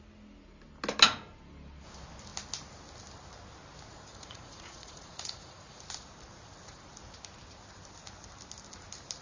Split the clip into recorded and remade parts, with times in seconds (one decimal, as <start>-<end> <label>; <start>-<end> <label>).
0.0-4.1 recorded; 4.1-5.8 remade; 5.8-9.2 recorded